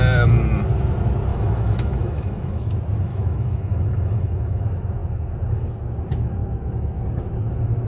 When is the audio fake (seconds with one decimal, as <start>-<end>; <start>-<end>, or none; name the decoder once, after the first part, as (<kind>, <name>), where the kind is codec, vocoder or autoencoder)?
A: 1.3-2.7 (autoencoder, DAC-VAE); 3.1-4.6